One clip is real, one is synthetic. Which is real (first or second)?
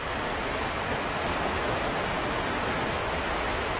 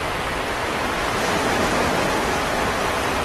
first